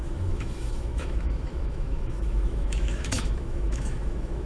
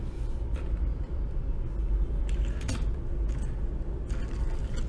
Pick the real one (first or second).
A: second